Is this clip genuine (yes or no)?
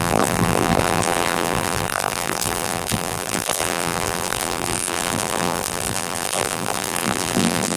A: no